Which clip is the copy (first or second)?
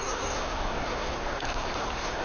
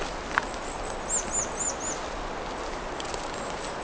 first